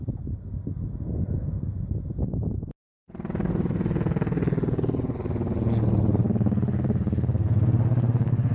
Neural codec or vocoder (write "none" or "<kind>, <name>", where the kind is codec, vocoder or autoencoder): none